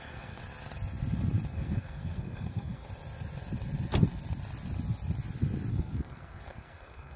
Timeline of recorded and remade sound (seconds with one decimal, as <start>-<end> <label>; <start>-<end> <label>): 0.0-0.4 remade; 0.4-1.5 recorded; 1.5-2.8 remade; 2.8-5.7 recorded; 5.7-7.2 remade